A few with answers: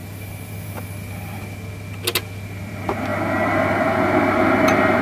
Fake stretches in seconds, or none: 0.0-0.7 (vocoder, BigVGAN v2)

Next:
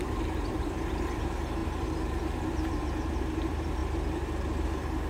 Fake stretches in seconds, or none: 0.0-3.8 (vocoder, BigVGAN v2)